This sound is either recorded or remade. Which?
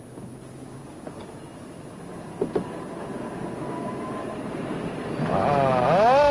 recorded